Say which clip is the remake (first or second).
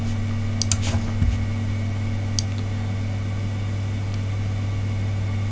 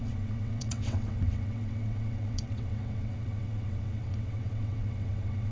second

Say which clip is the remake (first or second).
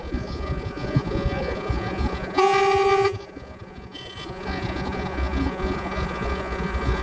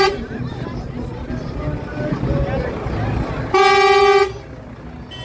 first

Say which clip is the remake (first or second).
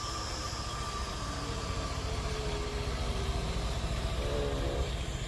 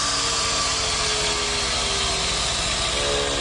first